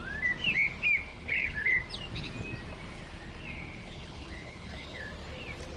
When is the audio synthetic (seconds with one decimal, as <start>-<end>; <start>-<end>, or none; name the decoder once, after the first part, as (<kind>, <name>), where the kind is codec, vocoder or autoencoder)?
1.1-1.8 (codec, HILCodec); 3.8-5.1